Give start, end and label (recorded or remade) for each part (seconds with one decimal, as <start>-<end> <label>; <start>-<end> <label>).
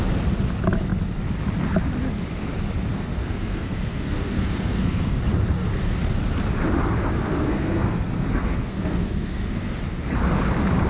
0.0-2.9 recorded; 2.9-5.2 remade; 5.2-7.0 recorded; 7.0-9.7 remade; 9.7-10.9 recorded